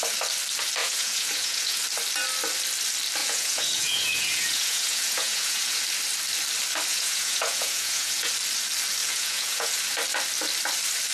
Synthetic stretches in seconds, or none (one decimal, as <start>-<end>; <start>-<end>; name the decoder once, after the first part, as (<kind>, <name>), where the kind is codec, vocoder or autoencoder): 0.8-1.8 (vocoder, Vocos); 3.2-5.8; 6.9-8.3; 9.0-9.8